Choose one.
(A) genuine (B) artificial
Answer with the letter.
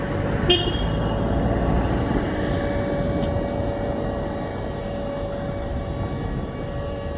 A